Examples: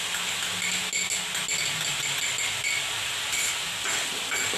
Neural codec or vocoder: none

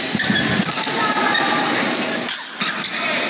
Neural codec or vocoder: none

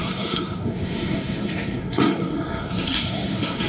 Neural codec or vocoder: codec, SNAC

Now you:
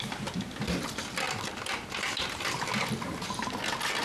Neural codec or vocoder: none